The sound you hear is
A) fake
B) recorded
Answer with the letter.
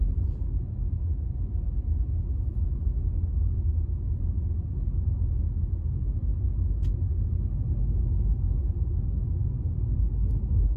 B